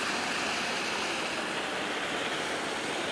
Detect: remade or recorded recorded